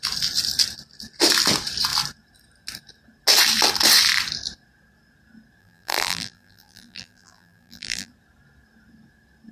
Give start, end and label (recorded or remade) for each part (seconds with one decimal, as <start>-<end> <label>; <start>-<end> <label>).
0.0-5.6 recorded; 5.6-8.1 remade; 8.1-9.5 recorded